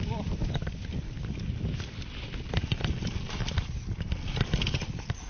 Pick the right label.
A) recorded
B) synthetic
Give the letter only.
A